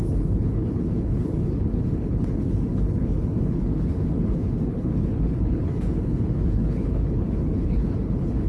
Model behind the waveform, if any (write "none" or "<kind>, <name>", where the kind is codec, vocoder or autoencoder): codec, HILCodec